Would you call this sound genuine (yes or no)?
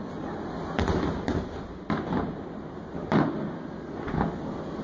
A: yes